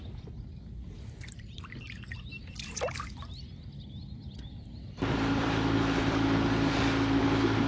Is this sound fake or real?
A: real